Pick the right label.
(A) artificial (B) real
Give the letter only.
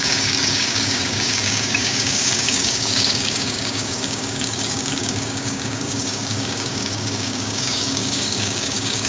A